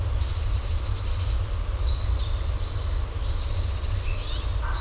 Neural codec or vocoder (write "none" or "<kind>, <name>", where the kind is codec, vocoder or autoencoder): none